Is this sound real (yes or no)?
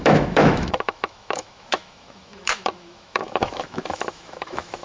no